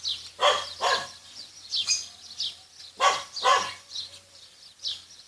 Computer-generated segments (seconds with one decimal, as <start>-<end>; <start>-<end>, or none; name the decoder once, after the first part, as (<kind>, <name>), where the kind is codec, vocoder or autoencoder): 1.2-1.9 (vocoder, Vocos); 3.5-4.3